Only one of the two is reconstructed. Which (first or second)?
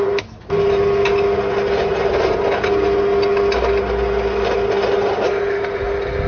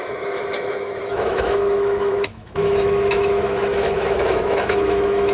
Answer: second